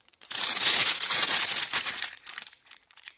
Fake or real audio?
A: fake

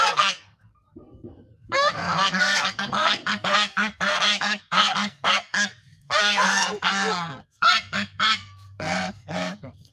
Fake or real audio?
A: fake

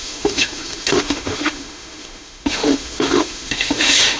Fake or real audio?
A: fake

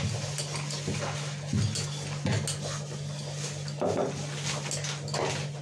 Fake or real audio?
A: real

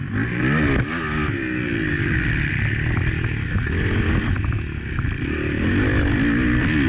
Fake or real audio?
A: real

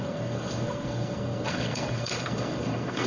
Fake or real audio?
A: fake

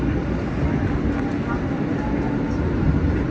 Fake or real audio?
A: real